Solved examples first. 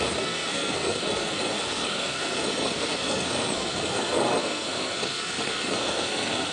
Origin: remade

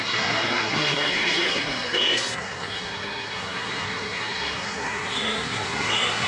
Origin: remade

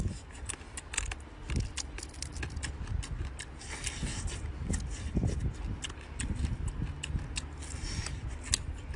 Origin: recorded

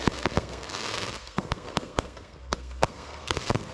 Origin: remade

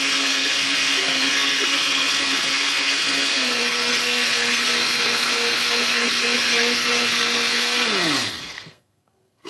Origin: remade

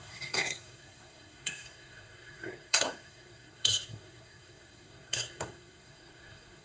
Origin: remade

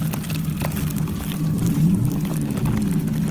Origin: recorded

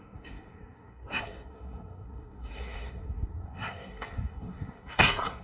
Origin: remade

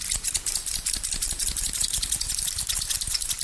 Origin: recorded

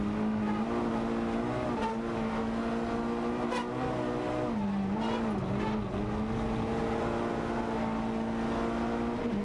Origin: recorded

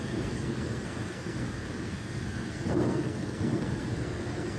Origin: remade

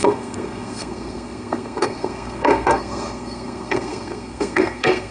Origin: remade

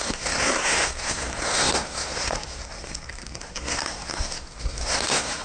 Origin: remade